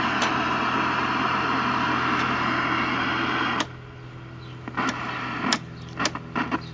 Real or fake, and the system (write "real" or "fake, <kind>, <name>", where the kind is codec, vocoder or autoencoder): real